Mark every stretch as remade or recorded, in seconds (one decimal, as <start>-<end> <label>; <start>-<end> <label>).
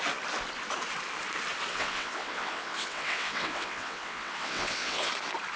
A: 0.0-1.7 recorded; 1.7-5.1 remade; 5.1-5.6 recorded